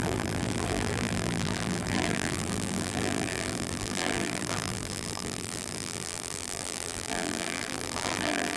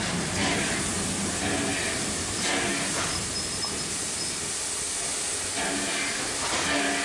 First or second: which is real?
second